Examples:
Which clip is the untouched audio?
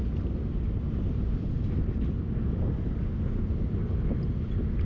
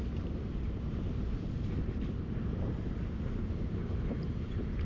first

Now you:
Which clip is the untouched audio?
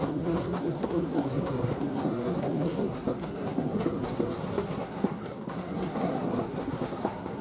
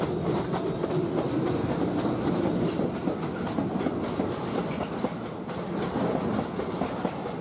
second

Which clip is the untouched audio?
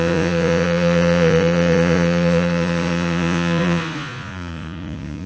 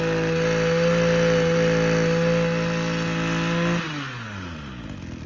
second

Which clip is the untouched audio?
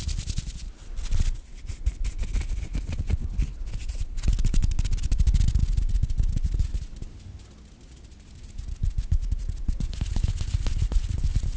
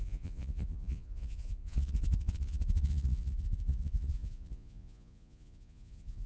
first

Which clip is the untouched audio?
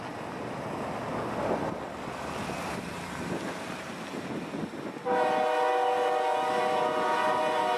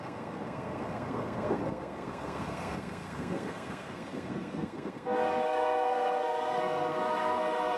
first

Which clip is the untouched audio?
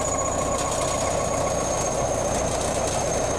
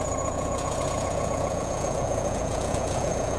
first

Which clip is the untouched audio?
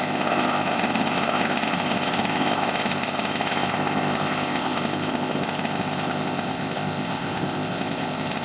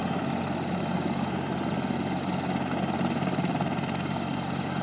second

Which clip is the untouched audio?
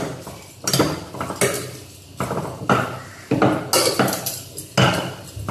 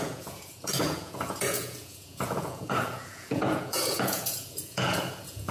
first